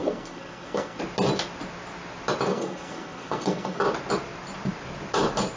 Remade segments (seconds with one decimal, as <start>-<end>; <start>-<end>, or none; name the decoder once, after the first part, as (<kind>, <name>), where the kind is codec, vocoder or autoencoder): 0.0-1.0 (codec, SNAC); 2.5-3.8